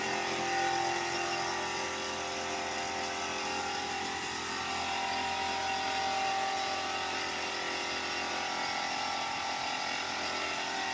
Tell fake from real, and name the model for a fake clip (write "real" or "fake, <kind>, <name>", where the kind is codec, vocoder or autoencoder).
real